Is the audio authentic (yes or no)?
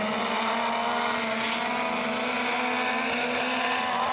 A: yes